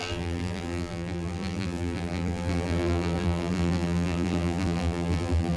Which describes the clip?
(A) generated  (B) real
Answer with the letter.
A